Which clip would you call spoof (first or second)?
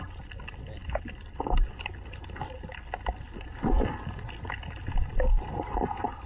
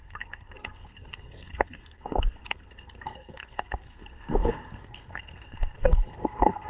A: second